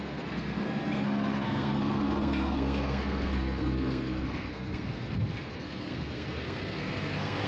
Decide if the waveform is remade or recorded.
remade